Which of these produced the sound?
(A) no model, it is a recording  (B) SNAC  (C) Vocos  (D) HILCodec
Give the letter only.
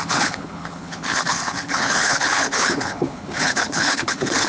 D